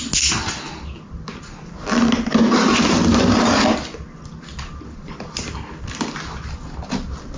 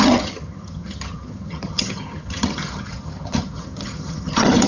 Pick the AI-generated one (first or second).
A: second